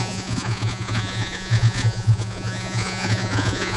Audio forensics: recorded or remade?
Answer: remade